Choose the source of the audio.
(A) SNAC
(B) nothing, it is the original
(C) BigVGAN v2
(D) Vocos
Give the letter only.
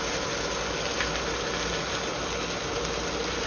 B